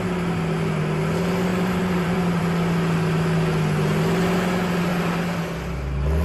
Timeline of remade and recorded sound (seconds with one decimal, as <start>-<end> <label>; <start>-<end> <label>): 0.0-1.5 recorded; 1.5-2.4 remade; 2.4-4.9 recorded; 4.9-5.4 remade; 5.4-6.2 recorded